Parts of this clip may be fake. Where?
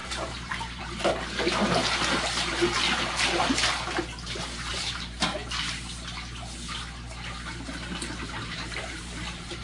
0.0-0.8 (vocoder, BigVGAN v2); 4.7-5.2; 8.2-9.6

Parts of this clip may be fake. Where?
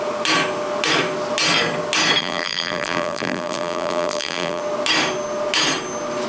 2.2-4.6 (vocoder, BigVGAN v2)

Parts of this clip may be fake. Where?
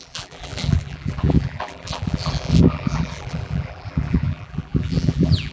0.0-5.5 (vocoder, BigVGAN v2)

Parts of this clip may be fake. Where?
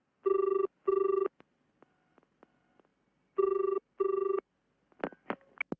2.9-4.5 (vocoder, BigVGAN v2)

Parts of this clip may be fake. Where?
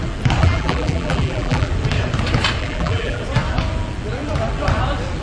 0.4-1.7 (vocoder, BigVGAN v2); 2.6-3.2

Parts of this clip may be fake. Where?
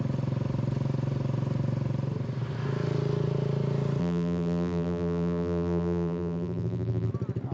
4.0-7.1 (vocoder, BigVGAN v2)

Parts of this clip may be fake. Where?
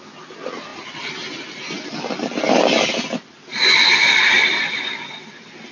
0.7-2.4 (vocoder, BigVGAN v2); 4.0-4.9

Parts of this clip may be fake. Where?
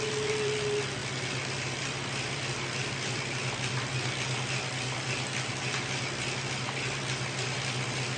1.0-5.5 (vocoder, BigVGAN v2)